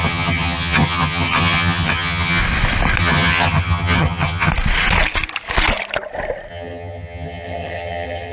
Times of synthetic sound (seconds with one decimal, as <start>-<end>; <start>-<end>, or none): 0.0-2.4; 3.0-4.5; 6.5-8.3